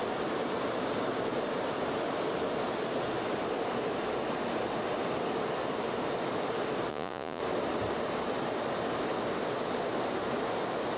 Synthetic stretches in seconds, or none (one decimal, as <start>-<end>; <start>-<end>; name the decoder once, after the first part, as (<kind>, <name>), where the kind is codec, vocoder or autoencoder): 6.9-7.4 (vocoder, Vocos)